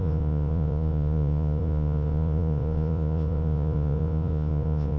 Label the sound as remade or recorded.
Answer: remade